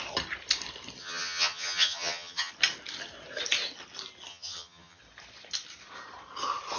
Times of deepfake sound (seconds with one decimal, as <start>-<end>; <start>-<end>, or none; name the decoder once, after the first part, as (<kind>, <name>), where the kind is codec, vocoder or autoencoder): 1.0-2.5 (vocoder, HiFi-GAN); 4.3-5.0